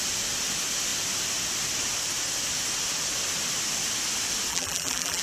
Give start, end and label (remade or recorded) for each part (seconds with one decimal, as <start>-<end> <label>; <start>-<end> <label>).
0.0-4.5 recorded; 4.5-5.2 remade